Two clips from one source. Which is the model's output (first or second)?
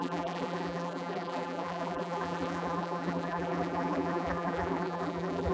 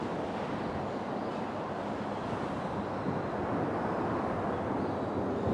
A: first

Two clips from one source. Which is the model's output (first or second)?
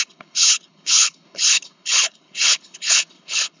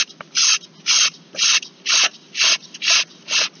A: first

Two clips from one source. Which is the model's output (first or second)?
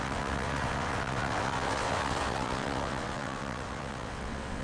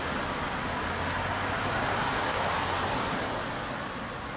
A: first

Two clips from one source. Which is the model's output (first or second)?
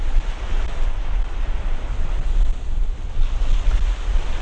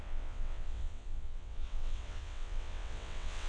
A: second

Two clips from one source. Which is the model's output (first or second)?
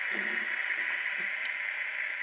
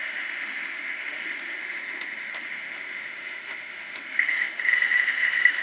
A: second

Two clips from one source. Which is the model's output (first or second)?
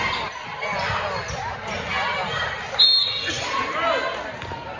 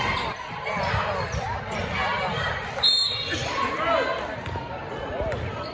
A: second